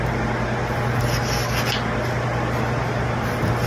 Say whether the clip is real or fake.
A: real